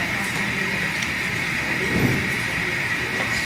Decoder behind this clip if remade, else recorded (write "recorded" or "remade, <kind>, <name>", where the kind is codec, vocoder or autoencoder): remade, vocoder, BigVGAN v2